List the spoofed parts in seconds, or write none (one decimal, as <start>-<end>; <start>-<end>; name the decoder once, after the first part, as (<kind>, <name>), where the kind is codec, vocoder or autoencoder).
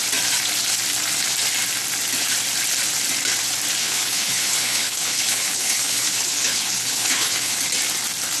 3.8-7.6 (codec, HILCodec)